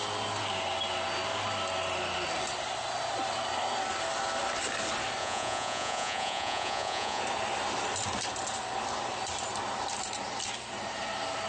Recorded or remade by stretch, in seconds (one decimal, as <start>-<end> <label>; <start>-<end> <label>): 0.0-5.2 recorded; 5.2-7.2 remade; 7.2-11.5 recorded